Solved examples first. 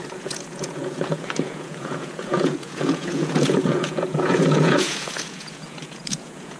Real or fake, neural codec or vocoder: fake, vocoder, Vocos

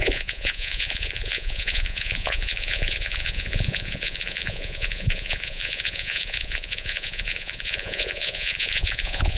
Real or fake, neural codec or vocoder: fake, vocoder, Vocos